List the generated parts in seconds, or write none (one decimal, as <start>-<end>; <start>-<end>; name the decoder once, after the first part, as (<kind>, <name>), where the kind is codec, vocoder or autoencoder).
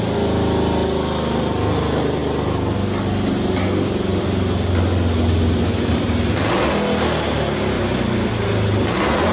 none